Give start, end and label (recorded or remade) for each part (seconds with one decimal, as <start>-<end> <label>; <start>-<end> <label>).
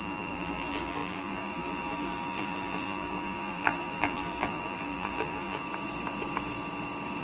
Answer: 0.0-5.6 remade; 5.6-7.2 recorded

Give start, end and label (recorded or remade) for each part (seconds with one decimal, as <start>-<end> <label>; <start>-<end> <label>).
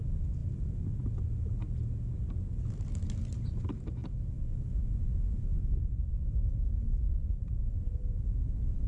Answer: 0.0-8.9 recorded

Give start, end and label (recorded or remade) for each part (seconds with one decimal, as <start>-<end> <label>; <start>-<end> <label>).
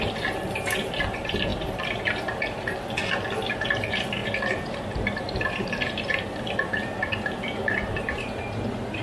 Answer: 0.0-1.5 remade; 1.5-2.4 recorded; 2.4-3.0 remade; 3.0-3.7 recorded; 3.7-9.0 remade